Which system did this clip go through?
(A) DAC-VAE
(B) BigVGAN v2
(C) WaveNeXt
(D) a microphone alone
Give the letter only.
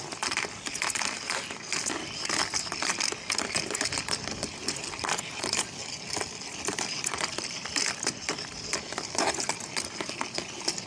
D